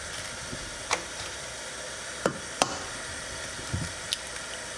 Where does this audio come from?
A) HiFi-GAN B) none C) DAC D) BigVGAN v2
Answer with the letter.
D